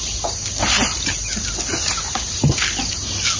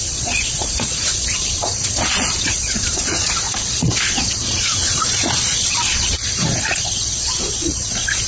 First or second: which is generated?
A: second